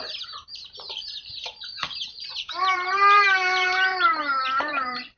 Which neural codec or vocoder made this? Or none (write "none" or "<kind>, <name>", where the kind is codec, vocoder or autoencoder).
vocoder, BigVGAN v2